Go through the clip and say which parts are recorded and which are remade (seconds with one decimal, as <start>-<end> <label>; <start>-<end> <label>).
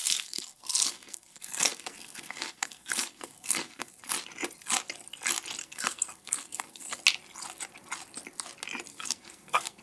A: 0.0-4.0 remade; 4.0-5.6 recorded; 5.6-7.0 remade; 7.0-8.9 recorded; 8.9-9.8 remade